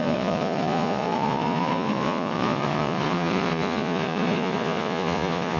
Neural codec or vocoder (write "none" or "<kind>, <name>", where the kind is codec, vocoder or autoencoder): vocoder, Vocos